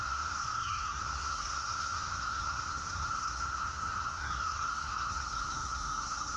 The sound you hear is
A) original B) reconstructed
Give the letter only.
B